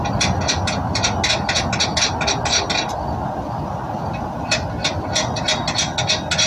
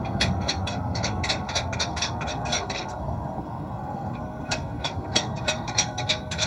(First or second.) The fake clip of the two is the second